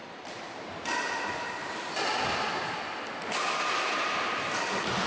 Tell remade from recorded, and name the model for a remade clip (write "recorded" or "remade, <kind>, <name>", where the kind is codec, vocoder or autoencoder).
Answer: recorded